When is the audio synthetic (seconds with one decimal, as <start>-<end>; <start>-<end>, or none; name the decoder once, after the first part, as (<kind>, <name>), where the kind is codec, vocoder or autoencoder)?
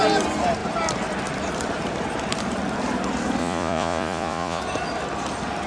3.4-4.6 (vocoder, Vocos)